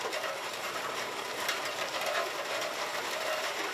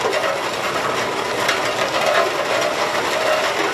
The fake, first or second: first